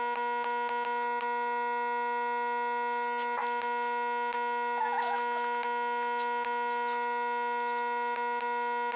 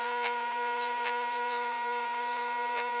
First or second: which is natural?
first